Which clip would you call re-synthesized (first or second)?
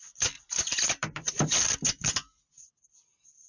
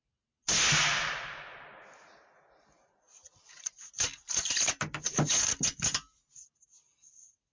first